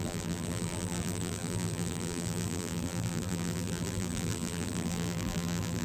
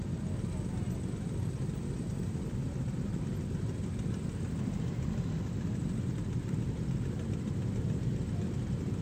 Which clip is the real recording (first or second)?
second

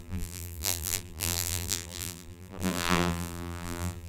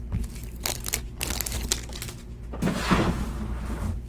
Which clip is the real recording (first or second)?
second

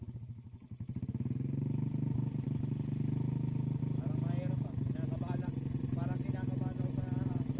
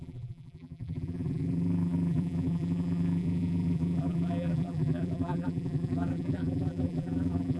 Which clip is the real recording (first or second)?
first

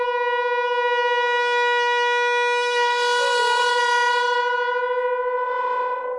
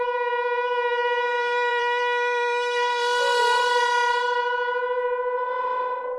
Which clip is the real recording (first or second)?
first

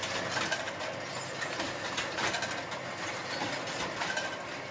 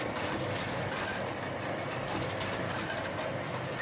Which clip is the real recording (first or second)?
first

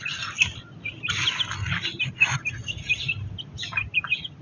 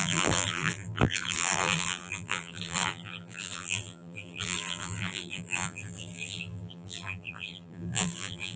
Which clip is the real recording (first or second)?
first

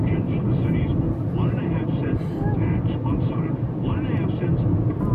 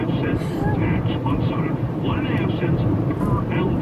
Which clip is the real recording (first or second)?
first